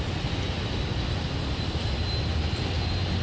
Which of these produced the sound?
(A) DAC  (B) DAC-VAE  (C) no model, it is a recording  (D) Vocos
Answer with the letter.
C